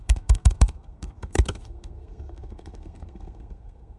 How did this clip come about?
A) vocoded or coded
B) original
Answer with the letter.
A